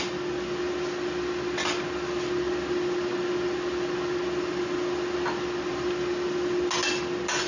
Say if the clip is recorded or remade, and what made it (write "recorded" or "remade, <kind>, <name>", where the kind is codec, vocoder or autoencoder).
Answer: recorded